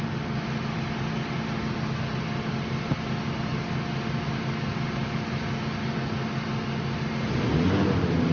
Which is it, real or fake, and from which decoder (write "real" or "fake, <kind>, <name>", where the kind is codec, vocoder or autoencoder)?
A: real